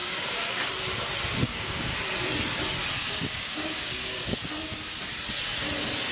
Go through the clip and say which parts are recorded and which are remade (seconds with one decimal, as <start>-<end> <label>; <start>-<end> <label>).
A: 0.0-0.7 remade; 0.7-1.4 recorded; 1.4-2.0 remade; 2.0-3.0 recorded; 3.0-4.4 remade; 4.4-6.1 recorded